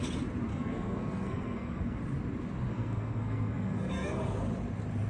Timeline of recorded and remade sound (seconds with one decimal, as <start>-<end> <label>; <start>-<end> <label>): 0.0-0.5 recorded; 0.5-2.0 remade; 2.0-2.7 recorded; 2.7-4.3 remade; 4.3-5.1 recorded

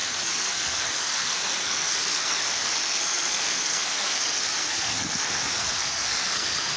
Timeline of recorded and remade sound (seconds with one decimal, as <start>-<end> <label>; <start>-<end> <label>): 0.0-6.8 remade

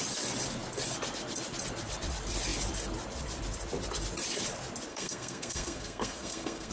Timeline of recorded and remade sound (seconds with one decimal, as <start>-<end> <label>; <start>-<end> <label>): 0.0-4.9 recorded; 4.9-6.7 remade

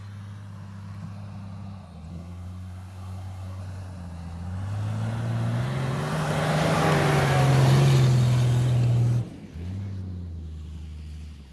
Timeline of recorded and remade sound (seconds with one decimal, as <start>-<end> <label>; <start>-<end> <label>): 0.0-2.1 recorded; 2.1-3.6 remade; 3.6-11.5 recorded